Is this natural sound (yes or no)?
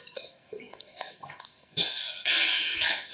no